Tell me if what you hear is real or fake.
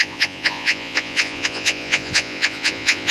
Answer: fake